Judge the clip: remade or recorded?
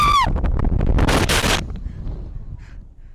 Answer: recorded